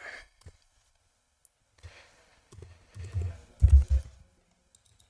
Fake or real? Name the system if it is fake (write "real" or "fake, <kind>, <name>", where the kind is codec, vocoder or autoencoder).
real